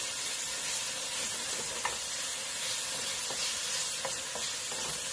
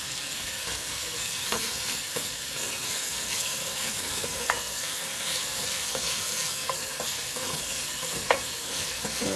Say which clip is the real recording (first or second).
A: first